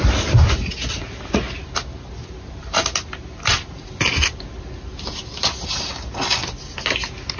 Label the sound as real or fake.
real